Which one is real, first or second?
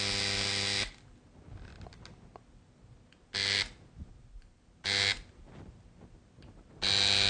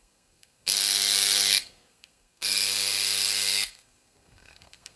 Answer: first